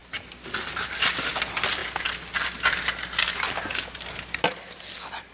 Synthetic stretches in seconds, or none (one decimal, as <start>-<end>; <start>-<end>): none